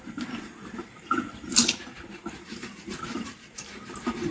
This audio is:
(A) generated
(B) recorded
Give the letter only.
B